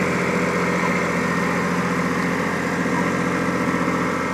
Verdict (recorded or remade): recorded